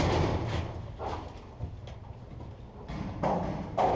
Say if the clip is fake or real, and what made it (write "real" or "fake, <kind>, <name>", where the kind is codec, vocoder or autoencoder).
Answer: real